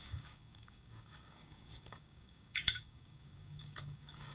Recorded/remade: remade